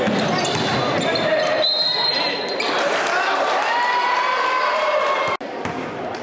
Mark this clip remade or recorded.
recorded